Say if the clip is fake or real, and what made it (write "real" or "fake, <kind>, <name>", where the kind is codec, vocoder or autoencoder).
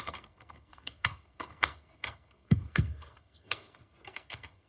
fake, codec, SNAC